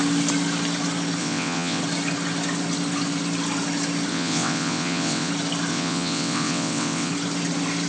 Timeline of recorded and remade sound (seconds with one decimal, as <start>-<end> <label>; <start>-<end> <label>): 0.0-1.2 recorded; 1.2-1.8 remade; 1.8-4.1 recorded; 4.1-5.3 remade; 5.3-5.7 recorded; 5.7-7.1 remade; 7.1-7.9 recorded